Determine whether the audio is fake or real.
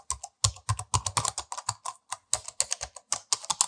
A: real